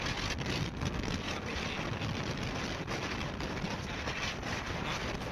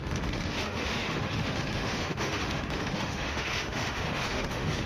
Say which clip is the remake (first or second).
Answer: second